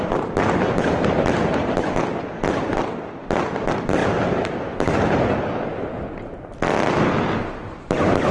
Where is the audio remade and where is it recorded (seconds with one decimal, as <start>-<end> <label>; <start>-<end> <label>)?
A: 0.0-8.3 recorded